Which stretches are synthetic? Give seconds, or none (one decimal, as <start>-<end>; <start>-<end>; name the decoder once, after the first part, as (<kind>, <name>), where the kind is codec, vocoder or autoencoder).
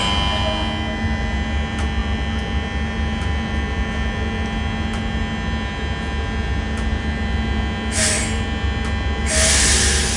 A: none